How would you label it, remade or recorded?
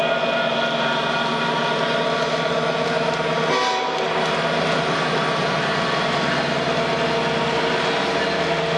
recorded